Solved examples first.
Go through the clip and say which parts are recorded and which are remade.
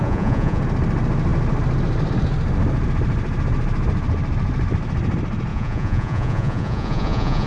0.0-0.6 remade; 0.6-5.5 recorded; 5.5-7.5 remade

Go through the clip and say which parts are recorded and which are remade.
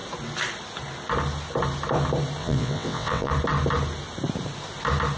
0.0-2.4 recorded; 2.4-3.3 remade; 3.3-5.2 recorded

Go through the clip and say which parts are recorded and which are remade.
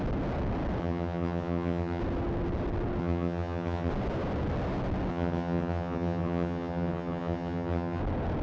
0.0-0.8 recorded; 0.8-2.0 remade; 2.0-3.0 recorded; 3.0-3.9 remade; 3.9-5.1 recorded; 5.1-8.0 remade; 8.0-8.4 recorded